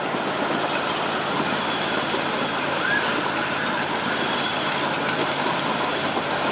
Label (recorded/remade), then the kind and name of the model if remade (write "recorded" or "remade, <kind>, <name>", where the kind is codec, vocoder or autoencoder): recorded